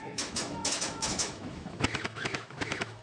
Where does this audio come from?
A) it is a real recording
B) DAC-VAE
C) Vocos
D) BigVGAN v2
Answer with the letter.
B